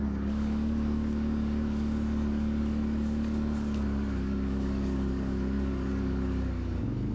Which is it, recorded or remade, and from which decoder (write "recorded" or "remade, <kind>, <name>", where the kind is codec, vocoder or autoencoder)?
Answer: remade, codec, DAC